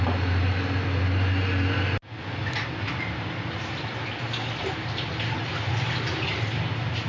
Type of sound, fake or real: real